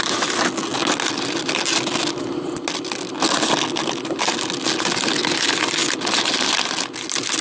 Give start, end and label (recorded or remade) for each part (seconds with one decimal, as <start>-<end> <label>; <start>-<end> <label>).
0.0-7.4 recorded